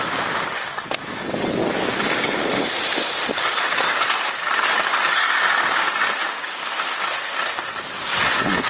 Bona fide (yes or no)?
yes